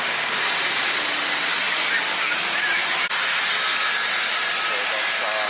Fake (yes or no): no